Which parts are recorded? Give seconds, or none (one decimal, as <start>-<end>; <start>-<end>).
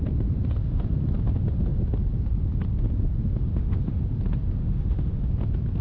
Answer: 0.0-3.4; 4.0-4.6; 5.2-5.8